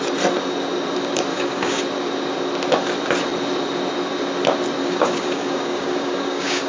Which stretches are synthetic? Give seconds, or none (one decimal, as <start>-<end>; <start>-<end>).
1.3-1.8; 4.8-6.7